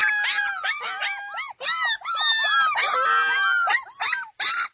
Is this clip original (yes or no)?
yes